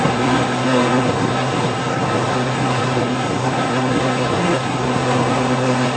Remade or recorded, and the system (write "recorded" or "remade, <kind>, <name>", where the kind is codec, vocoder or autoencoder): remade, codec, SNAC